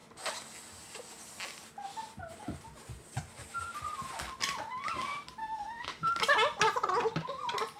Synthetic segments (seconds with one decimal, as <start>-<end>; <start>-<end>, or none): 5.4-6.1